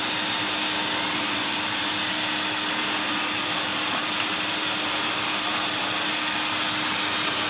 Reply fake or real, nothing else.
real